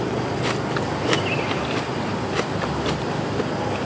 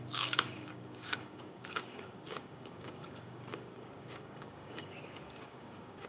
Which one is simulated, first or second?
second